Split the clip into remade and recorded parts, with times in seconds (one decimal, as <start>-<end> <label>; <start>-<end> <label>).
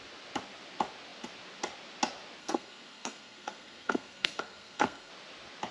0.0-2.4 recorded; 2.4-5.1 remade; 5.1-5.7 recorded